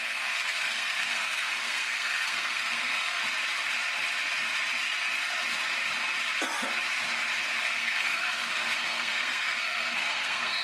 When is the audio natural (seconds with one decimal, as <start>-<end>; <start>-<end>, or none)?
3.2-7.6